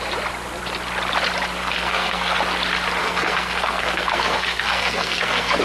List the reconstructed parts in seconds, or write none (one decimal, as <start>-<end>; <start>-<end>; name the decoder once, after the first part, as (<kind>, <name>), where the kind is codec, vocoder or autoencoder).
1.6-2.4 (codec, SNAC); 3.0-5.6